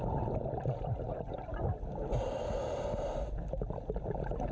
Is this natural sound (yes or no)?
yes